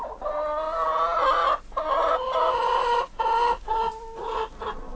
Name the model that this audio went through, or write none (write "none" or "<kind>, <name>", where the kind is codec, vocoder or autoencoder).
none